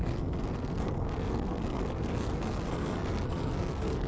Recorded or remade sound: remade